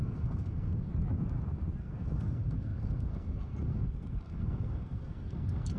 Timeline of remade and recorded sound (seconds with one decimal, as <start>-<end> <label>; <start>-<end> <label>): 0.0-0.9 remade; 0.9-1.8 recorded; 1.8-5.8 remade